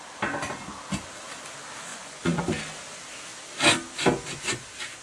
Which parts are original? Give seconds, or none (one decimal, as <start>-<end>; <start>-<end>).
0.0-1.9; 2.4-5.0